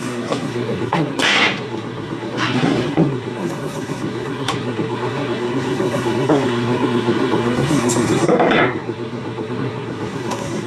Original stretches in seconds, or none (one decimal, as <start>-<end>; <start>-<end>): none